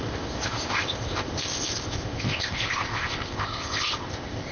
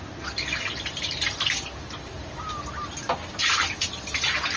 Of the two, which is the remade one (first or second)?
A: first